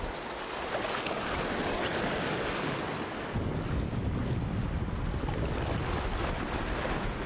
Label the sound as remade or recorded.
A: recorded